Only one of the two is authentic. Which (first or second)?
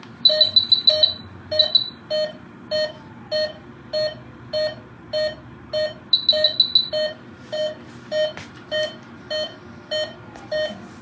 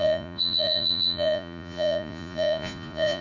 first